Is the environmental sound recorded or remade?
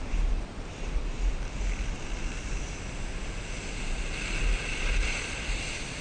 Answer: recorded